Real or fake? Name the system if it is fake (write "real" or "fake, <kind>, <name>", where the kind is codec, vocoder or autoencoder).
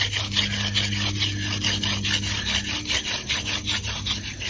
real